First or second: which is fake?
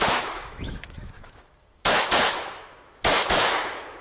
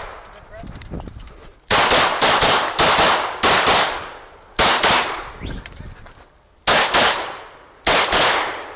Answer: first